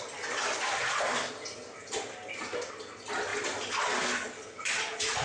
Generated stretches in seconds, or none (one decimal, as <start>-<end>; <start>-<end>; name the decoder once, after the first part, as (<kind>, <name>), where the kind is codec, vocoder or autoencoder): none

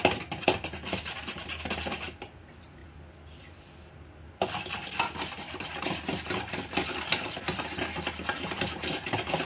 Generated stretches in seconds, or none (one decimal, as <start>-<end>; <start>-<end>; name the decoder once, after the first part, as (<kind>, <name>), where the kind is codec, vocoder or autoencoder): none